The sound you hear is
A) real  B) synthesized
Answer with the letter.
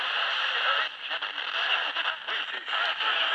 A